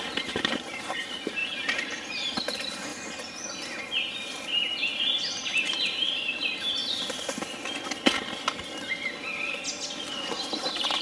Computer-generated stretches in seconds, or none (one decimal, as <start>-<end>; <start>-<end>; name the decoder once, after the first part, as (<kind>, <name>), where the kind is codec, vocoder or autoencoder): 0.0-1.4 (vocoder, BigVGAN v2); 2.1-2.9; 4.8-6.8; 10.6-11.0